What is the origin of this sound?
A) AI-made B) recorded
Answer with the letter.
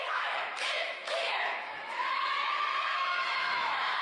A